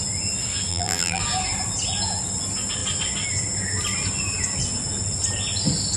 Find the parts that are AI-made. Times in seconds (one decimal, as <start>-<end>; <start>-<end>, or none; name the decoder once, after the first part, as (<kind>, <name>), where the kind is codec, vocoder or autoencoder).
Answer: 0.7-1.2 (vocoder, BigVGAN v2)